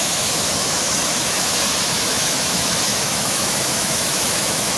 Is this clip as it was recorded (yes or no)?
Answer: no